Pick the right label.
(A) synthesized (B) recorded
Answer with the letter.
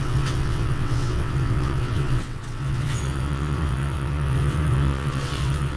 A